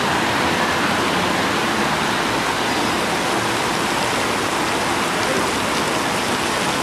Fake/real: real